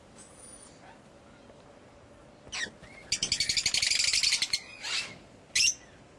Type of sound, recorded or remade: recorded